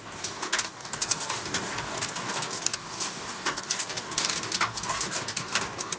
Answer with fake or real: fake